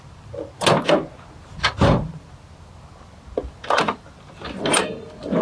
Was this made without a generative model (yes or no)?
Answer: yes